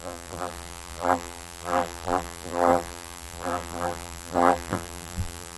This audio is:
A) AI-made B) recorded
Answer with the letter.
A